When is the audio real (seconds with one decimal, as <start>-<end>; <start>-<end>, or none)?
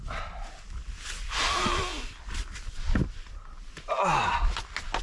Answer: 0.0-5.0